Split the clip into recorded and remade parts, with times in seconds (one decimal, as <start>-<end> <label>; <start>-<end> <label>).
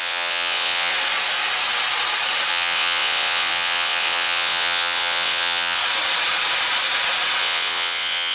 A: 0.0-0.9 remade; 0.9-2.5 recorded; 2.5-5.8 remade; 5.8-7.4 recorded; 7.4-8.3 remade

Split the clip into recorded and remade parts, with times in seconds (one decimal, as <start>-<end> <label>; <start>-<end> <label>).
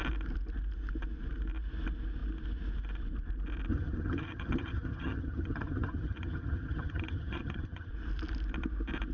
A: 0.0-3.7 recorded; 3.7-7.9 remade; 7.9-9.1 recorded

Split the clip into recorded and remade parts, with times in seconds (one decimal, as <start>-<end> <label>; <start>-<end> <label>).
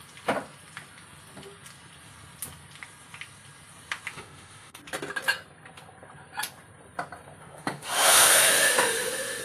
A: 0.0-4.1 recorded; 4.1-4.8 remade; 4.8-7.4 recorded; 7.4-9.4 remade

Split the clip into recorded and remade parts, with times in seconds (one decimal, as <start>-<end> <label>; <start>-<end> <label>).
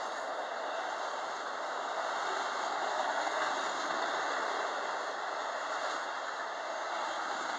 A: 0.0-2.9 recorded; 2.9-3.5 remade; 3.5-7.6 recorded